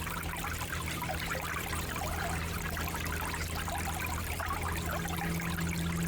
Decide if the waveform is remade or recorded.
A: recorded